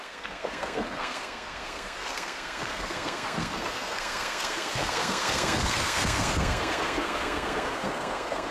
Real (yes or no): no